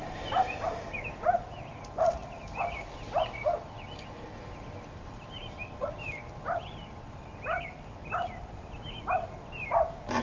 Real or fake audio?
real